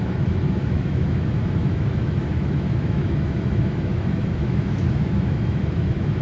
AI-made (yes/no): yes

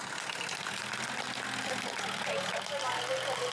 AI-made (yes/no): no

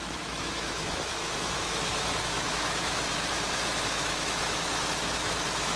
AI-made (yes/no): yes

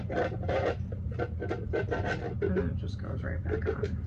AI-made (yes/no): no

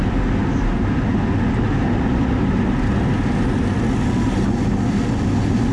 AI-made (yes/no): no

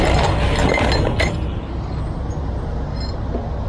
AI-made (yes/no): no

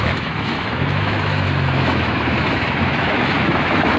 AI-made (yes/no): yes